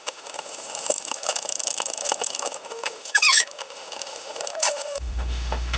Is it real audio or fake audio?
fake